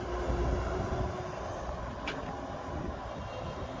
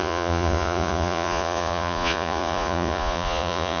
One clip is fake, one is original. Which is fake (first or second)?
second